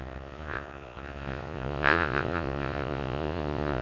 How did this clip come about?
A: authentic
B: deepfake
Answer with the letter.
B